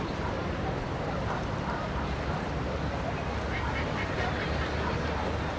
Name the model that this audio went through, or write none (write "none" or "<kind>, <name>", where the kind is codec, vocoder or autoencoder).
none